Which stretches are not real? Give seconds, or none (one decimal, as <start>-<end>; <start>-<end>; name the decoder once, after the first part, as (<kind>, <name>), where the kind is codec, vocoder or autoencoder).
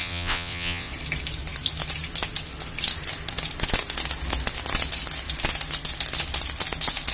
0.0-0.9 (vocoder, WaveNeXt)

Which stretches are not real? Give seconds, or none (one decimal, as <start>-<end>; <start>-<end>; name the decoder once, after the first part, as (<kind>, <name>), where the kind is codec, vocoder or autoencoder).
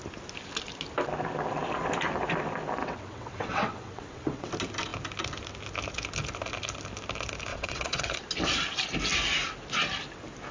2.8-4.5 (vocoder, WaveNeXt); 7.5-8.0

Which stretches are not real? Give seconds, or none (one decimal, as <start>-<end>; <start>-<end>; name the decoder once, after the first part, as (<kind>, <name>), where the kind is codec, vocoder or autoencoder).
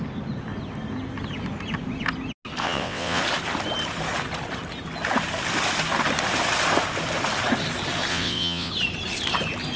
2.6-3.2 (vocoder, WaveNeXt); 8.1-8.7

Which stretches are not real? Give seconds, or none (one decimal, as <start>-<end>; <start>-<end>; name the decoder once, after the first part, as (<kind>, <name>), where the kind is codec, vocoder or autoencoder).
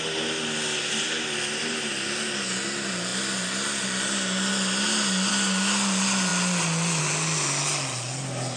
none